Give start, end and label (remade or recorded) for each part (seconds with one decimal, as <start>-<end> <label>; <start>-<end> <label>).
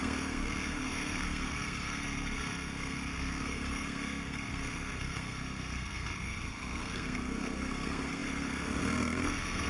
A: 0.0-9.7 remade